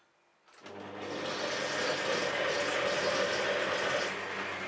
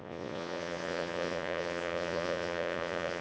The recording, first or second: first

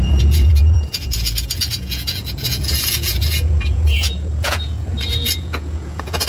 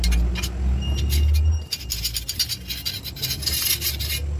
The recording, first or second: second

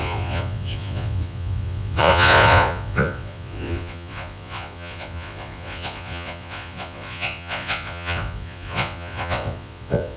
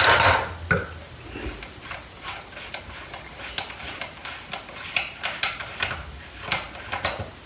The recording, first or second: second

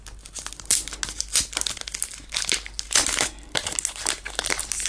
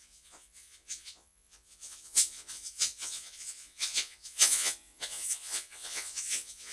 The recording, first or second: first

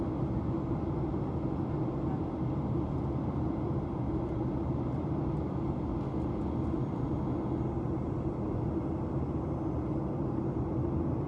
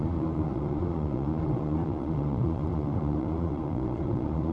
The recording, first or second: first